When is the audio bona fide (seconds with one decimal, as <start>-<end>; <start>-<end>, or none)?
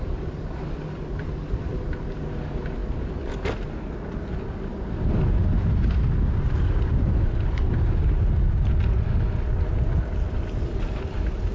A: 0.0-11.5